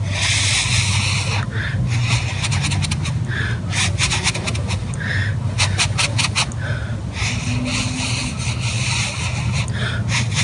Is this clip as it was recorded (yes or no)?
yes